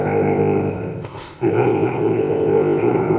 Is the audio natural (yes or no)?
no